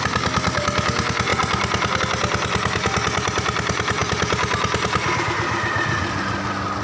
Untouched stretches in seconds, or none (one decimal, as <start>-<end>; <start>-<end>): 0.0-6.8